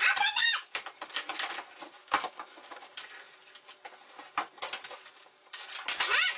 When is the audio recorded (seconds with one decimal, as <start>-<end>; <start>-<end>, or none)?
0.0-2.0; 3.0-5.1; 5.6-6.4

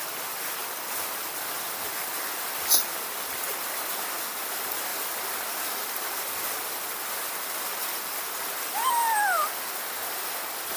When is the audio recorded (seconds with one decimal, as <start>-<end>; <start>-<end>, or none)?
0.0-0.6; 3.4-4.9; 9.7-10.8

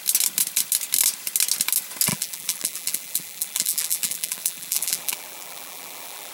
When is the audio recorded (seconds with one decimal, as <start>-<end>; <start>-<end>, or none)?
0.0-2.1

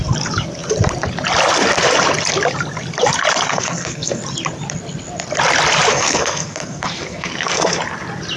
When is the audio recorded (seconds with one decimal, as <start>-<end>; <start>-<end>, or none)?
0.0-3.5; 4.2-5.9; 7.8-8.4

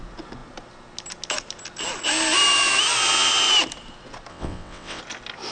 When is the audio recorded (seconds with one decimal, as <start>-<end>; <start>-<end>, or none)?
0.0-4.3; 5.0-5.5

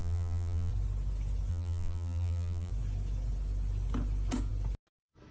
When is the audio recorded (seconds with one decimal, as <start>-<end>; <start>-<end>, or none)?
0.7-1.5; 2.7-5.3

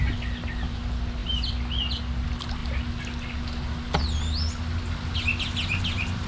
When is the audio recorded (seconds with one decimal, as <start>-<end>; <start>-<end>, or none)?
0.0-6.3